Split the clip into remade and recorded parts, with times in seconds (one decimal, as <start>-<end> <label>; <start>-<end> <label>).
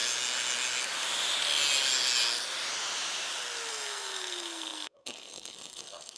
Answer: 0.0-3.7 recorded; 3.7-6.2 remade